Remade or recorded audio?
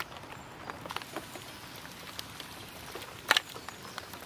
recorded